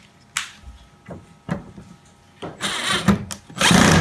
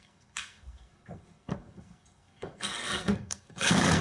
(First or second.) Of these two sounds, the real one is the first